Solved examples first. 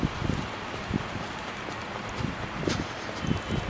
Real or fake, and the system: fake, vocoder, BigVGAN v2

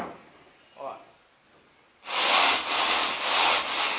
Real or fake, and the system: real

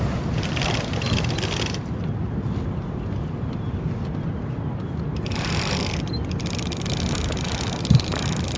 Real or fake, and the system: real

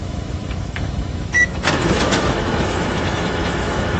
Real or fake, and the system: fake, autoencoder, DAC-VAE